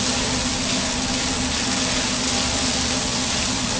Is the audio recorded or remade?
recorded